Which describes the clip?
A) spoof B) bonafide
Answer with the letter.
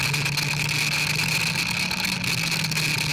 B